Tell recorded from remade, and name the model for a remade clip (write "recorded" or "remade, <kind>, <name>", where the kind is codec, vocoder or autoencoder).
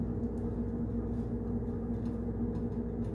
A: recorded